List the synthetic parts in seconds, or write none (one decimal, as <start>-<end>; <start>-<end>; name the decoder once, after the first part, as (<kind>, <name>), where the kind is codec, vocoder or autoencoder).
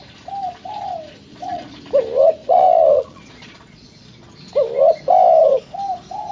1.3-1.8 (vocoder, Vocos); 2.4-4.3